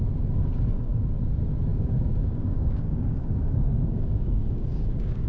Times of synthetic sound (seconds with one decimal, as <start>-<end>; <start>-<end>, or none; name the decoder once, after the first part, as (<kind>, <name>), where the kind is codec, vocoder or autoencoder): 1.7-5.3 (codec, DAC)